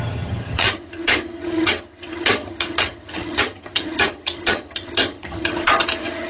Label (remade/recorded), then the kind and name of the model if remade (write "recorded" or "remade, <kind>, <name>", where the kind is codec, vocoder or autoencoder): remade, vocoder, HiFi-GAN